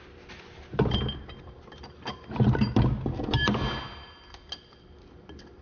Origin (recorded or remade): recorded